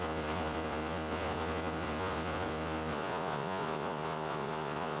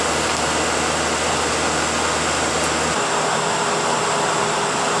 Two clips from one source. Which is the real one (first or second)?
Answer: second